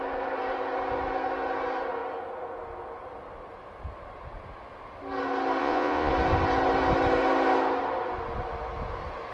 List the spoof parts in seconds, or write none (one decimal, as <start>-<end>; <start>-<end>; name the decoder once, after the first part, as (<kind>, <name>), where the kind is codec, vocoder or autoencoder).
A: 5.6-6.1 (vocoder, Vocos)

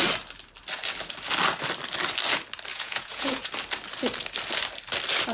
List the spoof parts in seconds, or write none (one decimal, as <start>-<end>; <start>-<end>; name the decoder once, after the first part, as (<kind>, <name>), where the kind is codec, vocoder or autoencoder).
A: 2.7-3.5 (vocoder, Vocos)